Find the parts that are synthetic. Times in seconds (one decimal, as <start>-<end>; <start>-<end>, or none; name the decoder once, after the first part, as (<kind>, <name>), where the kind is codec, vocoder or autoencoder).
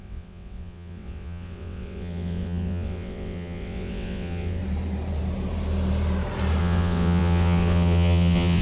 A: 0.0-4.6 (vocoder, WaveNeXt); 6.6-8.6